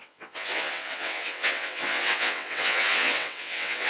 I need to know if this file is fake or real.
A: fake